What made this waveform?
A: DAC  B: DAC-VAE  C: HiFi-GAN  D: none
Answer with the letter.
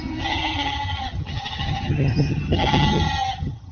C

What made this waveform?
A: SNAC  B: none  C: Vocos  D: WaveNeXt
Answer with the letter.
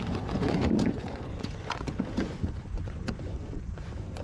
C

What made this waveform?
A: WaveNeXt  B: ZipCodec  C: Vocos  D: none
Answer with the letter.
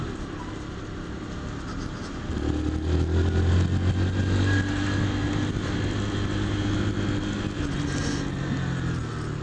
D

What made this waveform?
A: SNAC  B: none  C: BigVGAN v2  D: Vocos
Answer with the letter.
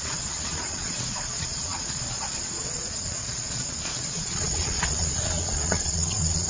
D